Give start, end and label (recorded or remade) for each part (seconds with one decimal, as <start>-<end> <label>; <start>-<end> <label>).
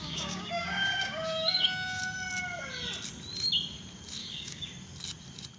0.0-2.0 remade; 2.0-4.2 recorded; 4.2-4.7 remade; 4.7-5.6 recorded